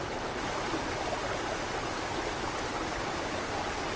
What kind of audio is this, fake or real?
real